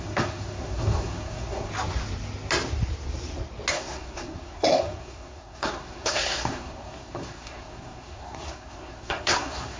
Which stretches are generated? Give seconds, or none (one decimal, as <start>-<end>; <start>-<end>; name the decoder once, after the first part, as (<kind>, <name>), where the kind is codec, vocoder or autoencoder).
0.0-1.7 (codec, SNAC); 3.7-9.8